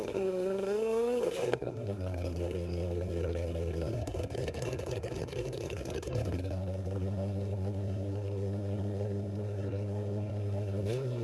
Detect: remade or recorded remade